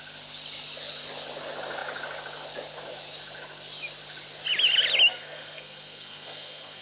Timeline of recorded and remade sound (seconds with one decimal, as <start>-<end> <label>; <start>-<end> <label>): 0.0-5.1 recorded; 5.1-6.8 remade